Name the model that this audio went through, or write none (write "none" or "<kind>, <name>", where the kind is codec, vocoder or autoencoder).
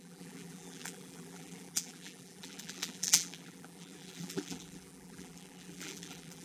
vocoder, BigVGAN v2